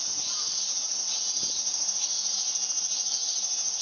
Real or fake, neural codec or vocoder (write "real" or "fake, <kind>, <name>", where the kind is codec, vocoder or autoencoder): real